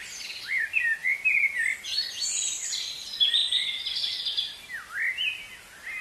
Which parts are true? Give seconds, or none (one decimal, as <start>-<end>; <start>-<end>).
0.0-3.4; 4.2-6.0